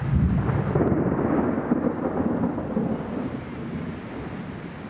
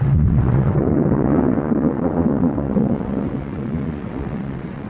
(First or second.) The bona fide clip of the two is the first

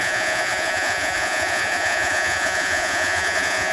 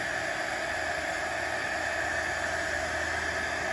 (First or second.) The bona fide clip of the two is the second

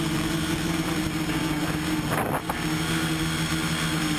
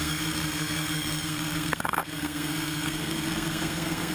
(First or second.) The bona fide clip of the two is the first